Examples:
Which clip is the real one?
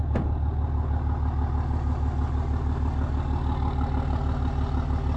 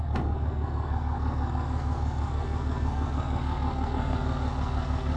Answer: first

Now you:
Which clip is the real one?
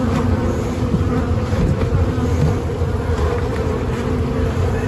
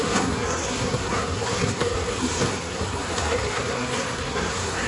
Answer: first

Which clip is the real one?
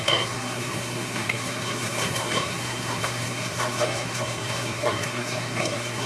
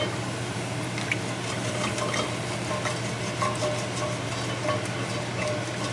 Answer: second